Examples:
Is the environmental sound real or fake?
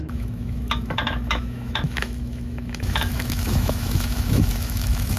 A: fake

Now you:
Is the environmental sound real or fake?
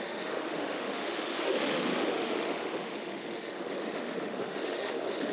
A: fake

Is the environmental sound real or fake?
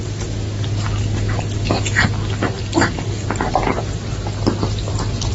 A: real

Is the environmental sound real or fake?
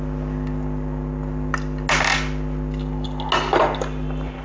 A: real